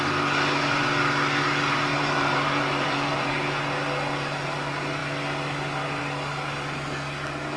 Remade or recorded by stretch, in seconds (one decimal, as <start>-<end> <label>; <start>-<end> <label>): 0.0-1.9 recorded; 1.9-3.3 remade; 3.3-7.6 recorded